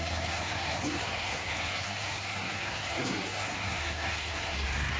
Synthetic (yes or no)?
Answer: yes